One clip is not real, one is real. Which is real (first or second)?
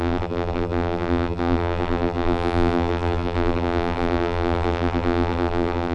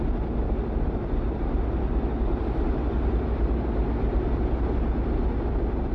second